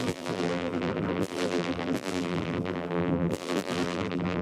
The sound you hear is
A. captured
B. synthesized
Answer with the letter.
B